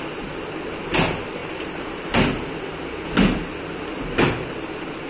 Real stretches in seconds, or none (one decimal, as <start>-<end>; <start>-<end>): 0.0-5.1